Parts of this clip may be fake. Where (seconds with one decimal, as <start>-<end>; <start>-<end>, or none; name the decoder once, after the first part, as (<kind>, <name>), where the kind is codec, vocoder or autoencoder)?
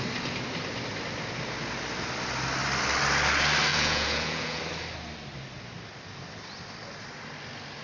3.7-4.6 (vocoder, Vocos)